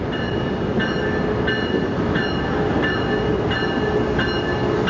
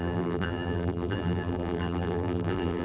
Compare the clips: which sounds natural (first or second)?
first